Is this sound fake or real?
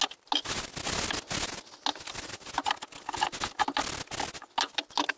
real